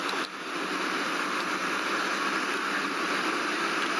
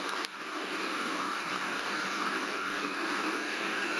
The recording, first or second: first